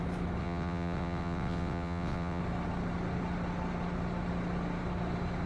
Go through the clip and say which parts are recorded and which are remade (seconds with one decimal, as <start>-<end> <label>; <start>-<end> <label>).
0.0-0.4 recorded; 0.4-2.4 remade; 2.4-5.5 recorded